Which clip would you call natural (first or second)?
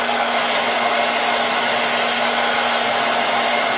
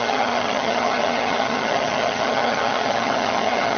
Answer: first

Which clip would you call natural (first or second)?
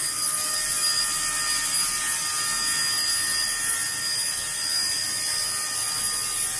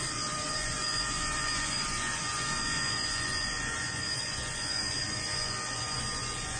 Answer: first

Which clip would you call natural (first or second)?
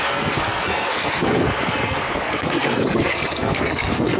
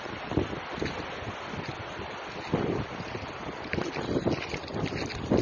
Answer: second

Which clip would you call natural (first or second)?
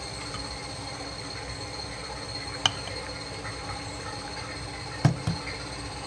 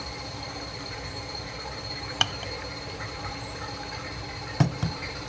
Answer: first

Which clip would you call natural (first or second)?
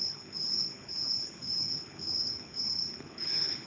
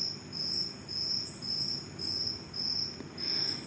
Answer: second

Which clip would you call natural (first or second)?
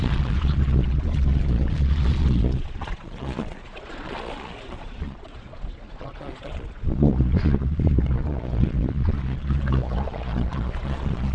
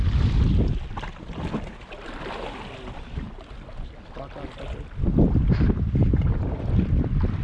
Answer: second